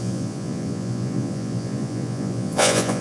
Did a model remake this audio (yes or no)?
yes